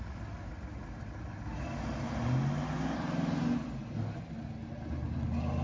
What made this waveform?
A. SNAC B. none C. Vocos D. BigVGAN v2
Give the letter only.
B